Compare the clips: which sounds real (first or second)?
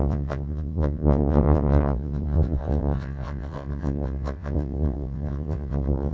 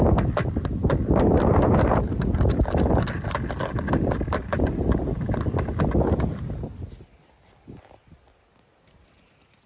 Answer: second